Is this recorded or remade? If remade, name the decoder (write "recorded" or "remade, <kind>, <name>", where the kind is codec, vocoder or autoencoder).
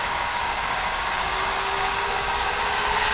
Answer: remade, codec, DAC